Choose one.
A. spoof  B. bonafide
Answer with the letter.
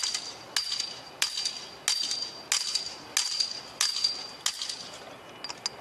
B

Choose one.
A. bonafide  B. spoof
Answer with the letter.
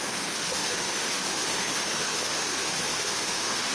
B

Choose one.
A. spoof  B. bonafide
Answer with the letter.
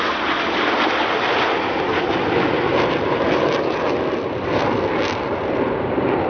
B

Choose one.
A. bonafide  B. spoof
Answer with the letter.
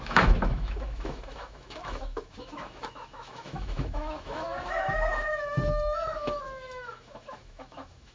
B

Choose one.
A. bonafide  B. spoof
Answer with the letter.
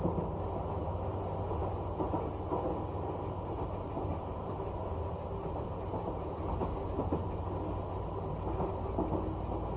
A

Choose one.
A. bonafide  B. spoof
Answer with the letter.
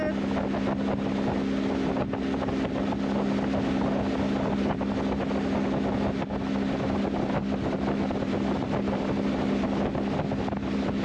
A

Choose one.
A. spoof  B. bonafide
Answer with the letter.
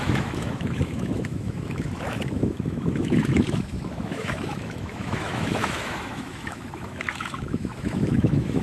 A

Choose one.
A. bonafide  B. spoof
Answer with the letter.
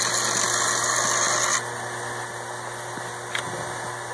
A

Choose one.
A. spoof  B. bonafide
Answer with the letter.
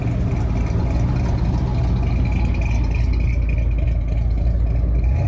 B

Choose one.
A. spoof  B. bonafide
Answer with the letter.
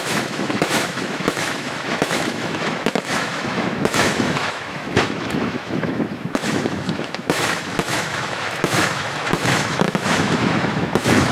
A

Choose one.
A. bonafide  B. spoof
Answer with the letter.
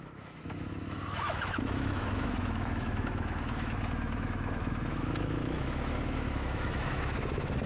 B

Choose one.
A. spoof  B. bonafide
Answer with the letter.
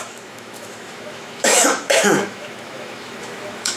A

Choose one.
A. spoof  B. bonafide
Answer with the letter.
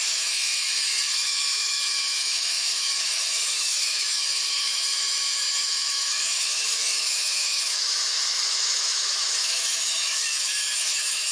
A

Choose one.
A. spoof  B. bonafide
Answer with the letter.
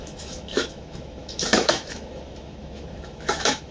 A